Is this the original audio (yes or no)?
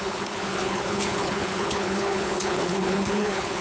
no